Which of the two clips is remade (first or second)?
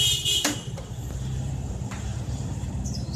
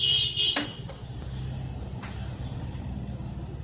first